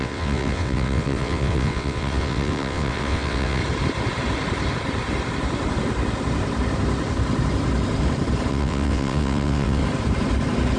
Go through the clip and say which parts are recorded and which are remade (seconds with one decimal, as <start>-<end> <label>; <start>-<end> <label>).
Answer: 0.0-3.6 remade; 3.6-8.5 recorded; 8.5-9.8 remade; 9.8-10.8 recorded